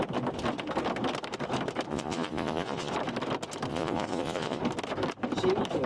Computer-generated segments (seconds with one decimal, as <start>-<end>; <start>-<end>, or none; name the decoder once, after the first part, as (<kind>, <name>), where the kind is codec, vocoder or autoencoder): 1.9-2.9 (vocoder, Vocos); 3.7-4.6